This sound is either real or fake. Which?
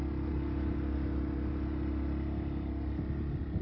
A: real